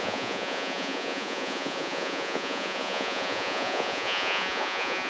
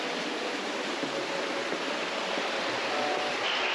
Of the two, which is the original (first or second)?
second